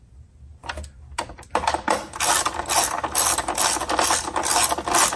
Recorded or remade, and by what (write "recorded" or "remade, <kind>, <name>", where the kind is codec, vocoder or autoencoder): recorded